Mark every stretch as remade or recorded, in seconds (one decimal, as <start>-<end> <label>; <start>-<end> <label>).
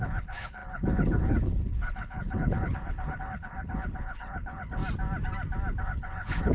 0.0-4.8 remade; 4.8-5.8 recorded; 5.8-6.5 remade